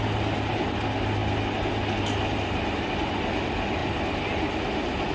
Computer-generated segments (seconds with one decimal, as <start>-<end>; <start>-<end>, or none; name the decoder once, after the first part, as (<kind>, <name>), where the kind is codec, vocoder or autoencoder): none